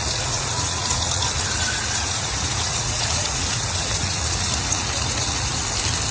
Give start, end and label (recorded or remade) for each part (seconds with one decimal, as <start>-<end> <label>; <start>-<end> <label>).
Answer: 0.0-5.5 remade; 5.5-6.1 recorded